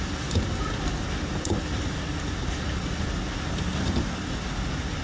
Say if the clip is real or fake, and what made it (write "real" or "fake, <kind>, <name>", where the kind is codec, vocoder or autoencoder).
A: real